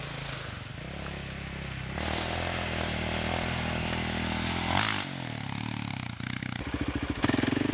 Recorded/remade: recorded